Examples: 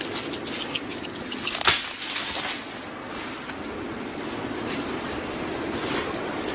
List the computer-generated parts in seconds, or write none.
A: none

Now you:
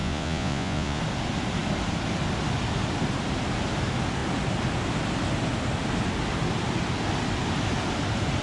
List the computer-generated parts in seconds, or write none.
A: 0.0-1.0 (vocoder, Vocos)

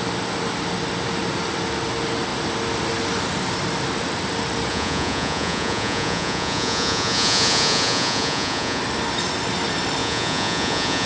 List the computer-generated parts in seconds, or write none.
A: 4.7-8.8 (vocoder, Vocos); 10.0-11.1

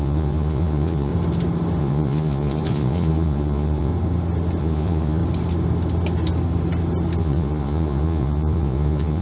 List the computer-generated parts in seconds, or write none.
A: 0.0-1.1 (vocoder, Vocos); 1.8-3.9; 4.6-5.2; 7.2-9.2